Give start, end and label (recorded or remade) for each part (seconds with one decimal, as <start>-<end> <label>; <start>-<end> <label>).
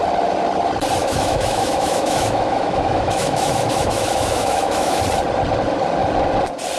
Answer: 0.0-1.0 recorded; 1.0-5.0 remade; 5.0-6.8 recorded